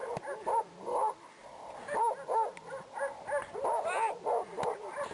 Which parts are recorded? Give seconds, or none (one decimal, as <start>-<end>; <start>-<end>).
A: 0.6-5.1